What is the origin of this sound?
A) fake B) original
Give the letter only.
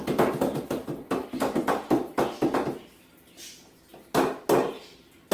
B